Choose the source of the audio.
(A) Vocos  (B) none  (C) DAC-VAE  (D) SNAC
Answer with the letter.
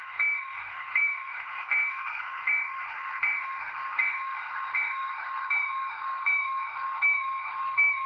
C